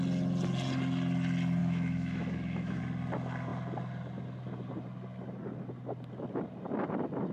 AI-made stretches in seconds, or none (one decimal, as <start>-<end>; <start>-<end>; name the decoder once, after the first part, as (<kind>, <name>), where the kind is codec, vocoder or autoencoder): 1.6-2.8 (autoencoder, DAC-VAE)